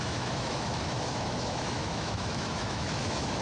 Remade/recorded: remade